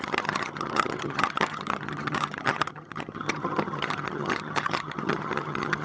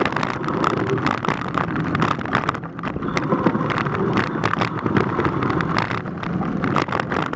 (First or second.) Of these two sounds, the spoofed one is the first